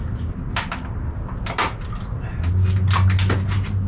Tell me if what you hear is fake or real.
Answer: real